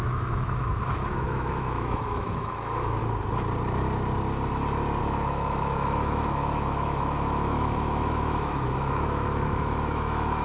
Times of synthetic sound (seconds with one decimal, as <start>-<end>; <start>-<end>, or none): 0.0-3.0; 5.0-10.4